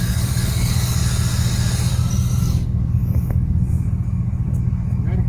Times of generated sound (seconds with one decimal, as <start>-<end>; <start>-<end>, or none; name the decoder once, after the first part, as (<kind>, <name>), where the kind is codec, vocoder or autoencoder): 0.0-1.0 (codec, DAC); 2.4-5.3